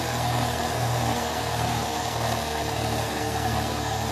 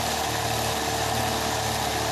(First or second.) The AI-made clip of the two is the first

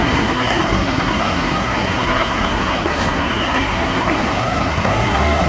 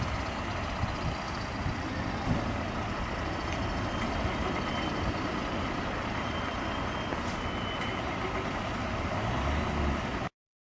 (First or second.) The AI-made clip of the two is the first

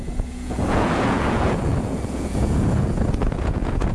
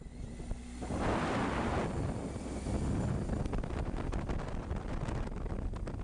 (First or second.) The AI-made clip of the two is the first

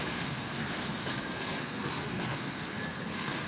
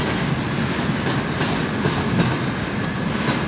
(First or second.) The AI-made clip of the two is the first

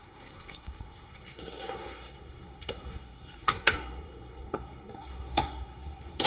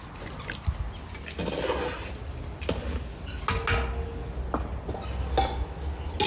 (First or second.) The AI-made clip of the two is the first